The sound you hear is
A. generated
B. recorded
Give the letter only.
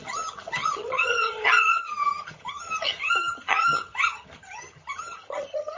A